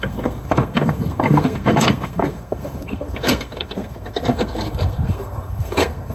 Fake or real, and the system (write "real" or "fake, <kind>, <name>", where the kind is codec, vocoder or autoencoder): fake, codec, SNAC